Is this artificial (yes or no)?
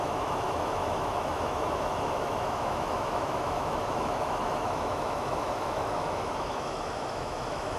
yes